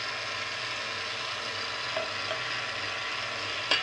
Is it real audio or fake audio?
real